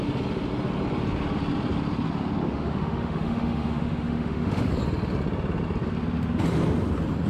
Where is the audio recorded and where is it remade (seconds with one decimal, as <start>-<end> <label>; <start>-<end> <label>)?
0.0-2.5 recorded; 2.5-4.7 remade; 4.7-7.3 recorded